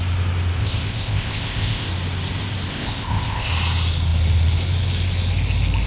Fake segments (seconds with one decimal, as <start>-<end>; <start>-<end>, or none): 0.6-1.9; 2.7-3.5